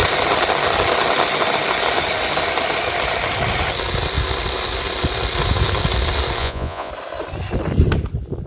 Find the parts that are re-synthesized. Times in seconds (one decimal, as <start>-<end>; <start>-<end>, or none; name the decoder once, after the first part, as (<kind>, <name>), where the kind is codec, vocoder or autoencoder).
6.4-6.9 (vocoder, Vocos)